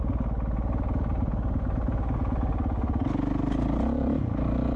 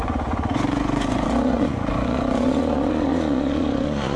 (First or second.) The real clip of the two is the first